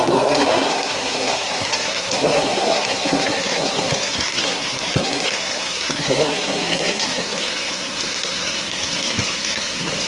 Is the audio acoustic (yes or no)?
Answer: no